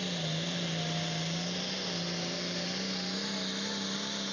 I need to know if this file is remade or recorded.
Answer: recorded